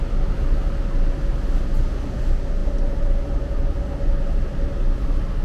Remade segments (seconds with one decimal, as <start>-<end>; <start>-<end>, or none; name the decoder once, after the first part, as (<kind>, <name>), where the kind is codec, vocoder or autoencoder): none